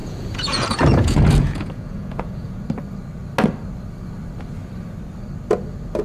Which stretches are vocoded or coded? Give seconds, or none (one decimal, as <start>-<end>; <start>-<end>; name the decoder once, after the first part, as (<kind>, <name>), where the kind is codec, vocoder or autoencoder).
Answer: 0.0-2.6 (vocoder, Vocos)

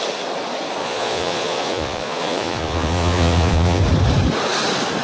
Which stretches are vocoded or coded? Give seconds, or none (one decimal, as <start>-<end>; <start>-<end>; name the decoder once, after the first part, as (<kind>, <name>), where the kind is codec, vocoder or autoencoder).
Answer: 0.8-3.8 (vocoder, Vocos)

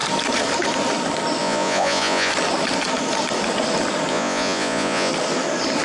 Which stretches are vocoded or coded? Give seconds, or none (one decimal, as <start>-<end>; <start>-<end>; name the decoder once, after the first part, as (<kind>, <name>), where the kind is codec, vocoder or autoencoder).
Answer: 1.4-2.3 (vocoder, Vocos); 4.1-5.1

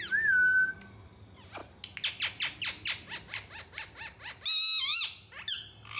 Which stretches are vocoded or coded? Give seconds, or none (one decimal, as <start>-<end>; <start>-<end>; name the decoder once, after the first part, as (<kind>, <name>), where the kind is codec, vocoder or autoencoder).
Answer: none

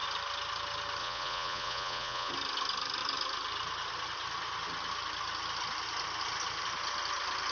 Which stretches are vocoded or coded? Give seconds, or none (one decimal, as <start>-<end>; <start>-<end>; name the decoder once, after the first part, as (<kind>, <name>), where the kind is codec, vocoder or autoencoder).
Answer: 1.0-2.3 (vocoder, Vocos)